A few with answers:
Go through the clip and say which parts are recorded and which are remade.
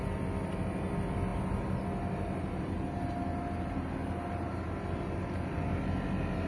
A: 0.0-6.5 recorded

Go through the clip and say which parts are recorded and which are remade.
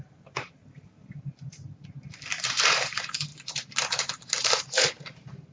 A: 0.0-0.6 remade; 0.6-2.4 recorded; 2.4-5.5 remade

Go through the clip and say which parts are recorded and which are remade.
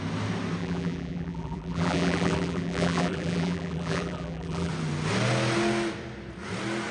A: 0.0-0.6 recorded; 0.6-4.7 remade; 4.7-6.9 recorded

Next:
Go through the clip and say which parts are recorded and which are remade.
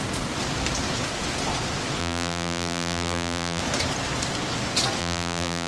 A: 0.0-2.0 recorded; 2.0-3.6 remade; 3.6-5.0 recorded; 5.0-5.7 remade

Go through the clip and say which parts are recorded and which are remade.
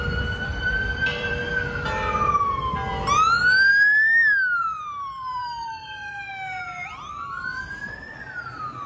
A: 0.0-0.5 recorded; 0.5-1.4 remade; 1.4-4.6 recorded; 4.6-6.3 remade; 6.3-8.9 recorded